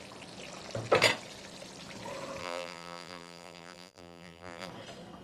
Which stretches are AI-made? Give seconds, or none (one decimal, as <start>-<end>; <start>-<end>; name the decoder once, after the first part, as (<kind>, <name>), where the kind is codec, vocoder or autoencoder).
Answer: 2.4-4.7 (vocoder, BigVGAN v2)